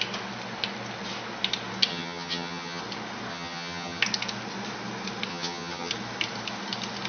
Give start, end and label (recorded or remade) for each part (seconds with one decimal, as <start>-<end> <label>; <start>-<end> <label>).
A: 0.0-1.9 recorded; 1.9-2.8 remade; 2.8-3.3 recorded; 3.3-4.0 remade; 4.0-5.3 recorded; 5.3-5.9 remade; 5.9-7.1 recorded